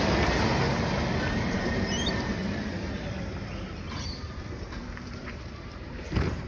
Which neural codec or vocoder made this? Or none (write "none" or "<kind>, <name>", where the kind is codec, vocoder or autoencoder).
vocoder, BigVGAN v2